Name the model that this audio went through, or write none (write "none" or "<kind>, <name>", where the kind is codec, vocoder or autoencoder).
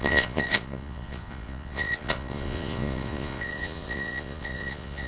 vocoder, Vocos